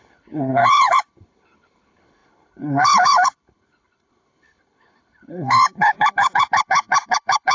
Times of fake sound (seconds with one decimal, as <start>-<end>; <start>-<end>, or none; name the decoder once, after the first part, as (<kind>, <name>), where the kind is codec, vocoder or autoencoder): 0.0-7.5 (codec, HILCodec)